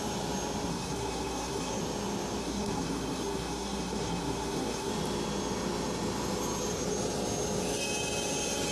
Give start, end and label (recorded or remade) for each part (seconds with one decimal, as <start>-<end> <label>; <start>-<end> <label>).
0.0-0.7 recorded; 0.7-1.8 remade; 1.8-2.4 recorded; 2.4-4.9 remade; 4.9-8.7 recorded